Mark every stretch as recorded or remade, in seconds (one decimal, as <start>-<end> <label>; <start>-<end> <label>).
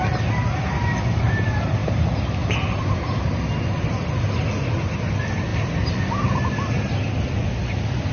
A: 0.0-8.1 recorded